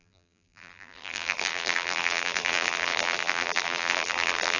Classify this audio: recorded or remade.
remade